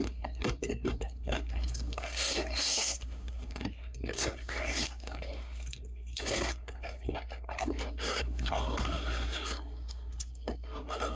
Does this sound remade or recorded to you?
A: remade